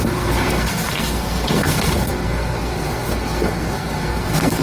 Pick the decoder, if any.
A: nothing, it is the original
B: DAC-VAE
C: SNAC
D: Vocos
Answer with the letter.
C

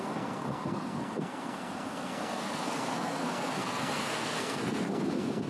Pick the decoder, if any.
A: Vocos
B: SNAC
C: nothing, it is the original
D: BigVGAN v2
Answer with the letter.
B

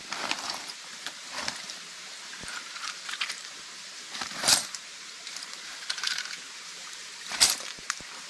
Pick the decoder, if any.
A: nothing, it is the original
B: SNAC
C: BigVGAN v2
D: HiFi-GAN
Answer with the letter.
C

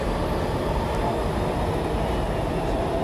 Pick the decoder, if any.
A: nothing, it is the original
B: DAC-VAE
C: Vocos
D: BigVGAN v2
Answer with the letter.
A